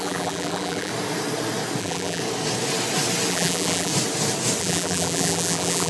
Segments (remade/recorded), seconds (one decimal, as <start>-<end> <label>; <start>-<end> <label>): 0.0-0.9 remade; 0.9-1.8 recorded; 1.8-2.2 remade; 2.2-3.3 recorded; 3.3-3.9 remade; 3.9-4.6 recorded; 4.6-5.9 remade